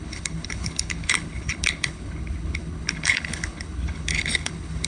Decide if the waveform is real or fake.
fake